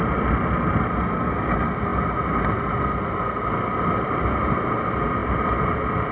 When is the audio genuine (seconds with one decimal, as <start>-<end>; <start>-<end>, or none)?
0.0-6.1